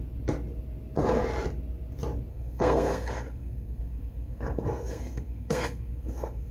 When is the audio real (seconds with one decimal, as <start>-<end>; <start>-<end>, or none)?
0.0-2.3